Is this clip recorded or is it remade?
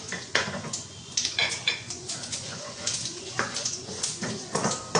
remade